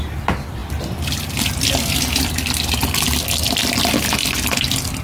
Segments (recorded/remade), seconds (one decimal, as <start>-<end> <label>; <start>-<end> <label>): 0.0-5.0 recorded